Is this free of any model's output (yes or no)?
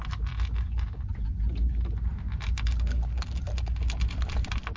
yes